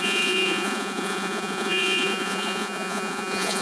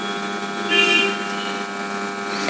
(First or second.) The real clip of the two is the second